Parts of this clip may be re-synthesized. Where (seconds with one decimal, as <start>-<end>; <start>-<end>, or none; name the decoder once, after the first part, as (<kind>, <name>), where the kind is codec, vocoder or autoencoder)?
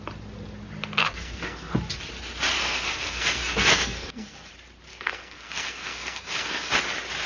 1.0-1.7 (codec, SNAC); 2.6-4.5; 4.9-6.7